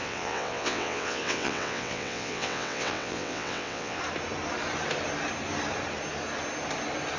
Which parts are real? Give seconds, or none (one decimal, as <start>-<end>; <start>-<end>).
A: 4.0-7.2